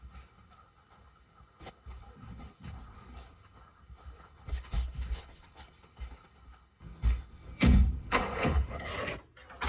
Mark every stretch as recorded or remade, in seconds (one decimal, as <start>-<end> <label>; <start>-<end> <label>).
0.0-8.9 remade; 8.9-9.7 recorded